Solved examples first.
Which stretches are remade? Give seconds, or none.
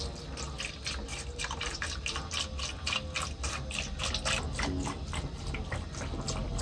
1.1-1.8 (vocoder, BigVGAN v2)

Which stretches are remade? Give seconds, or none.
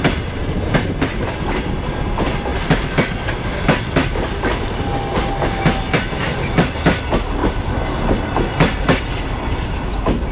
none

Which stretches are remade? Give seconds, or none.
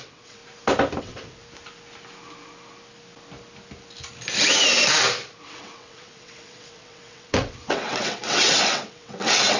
0.0-0.4 (vocoder, WaveNeXt); 1.0-1.4; 5.4-9.6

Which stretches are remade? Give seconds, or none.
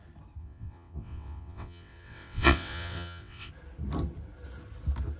0.4-3.5 (vocoder, WaveNeXt)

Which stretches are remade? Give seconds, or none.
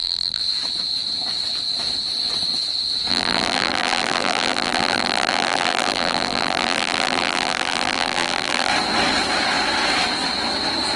0.0-0.4 (vocoder, BigVGAN v2); 3.1-8.7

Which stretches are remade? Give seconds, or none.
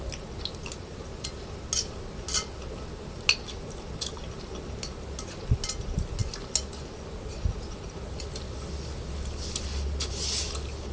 none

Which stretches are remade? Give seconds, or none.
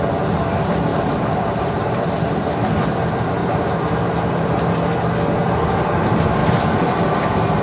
0.9-2.6 (vocoder, BigVGAN v2); 3.4-4.6; 6.4-7.6